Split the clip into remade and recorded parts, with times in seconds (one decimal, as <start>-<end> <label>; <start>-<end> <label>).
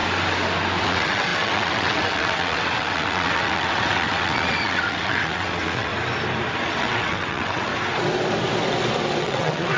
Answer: 0.0-0.8 recorded; 0.8-5.9 remade; 5.9-6.8 recorded; 6.8-7.7 remade; 7.7-9.2 recorded; 9.2-9.8 remade